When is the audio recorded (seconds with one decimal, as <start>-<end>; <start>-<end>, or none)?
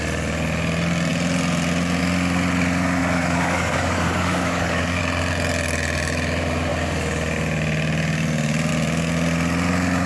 0.0-3.0; 5.0-10.1